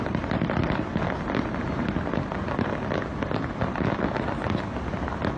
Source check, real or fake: real